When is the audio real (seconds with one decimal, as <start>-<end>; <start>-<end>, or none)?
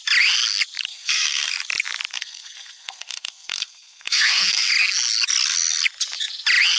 0.0-0.9; 1.5-2.1; 4.7-6.8